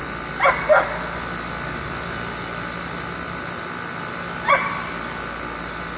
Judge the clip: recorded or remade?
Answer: recorded